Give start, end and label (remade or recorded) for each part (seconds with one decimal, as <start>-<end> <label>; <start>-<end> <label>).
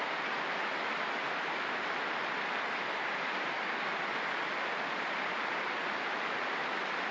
0.0-7.1 recorded